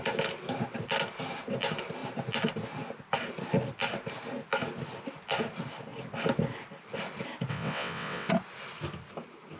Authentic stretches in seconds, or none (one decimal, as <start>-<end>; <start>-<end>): 0.0-7.5; 8.3-9.6